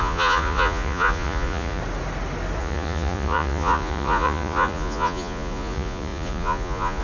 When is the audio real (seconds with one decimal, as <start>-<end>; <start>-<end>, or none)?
1.8-2.6